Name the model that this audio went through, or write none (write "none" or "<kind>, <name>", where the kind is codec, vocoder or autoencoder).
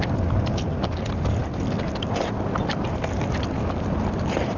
none